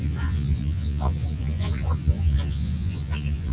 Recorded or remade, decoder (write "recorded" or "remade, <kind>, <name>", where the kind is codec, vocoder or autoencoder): remade, vocoder, Vocos